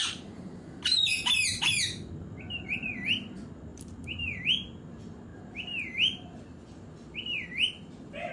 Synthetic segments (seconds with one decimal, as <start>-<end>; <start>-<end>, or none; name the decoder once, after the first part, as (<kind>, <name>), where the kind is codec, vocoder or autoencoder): 0.9-1.6 (vocoder, BigVGAN v2); 3.7-4.4